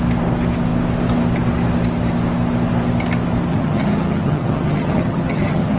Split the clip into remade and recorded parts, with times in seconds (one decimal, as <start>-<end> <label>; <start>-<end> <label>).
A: 0.0-3.5 recorded; 3.5-5.8 remade